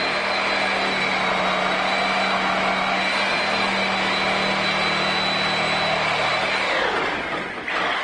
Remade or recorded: recorded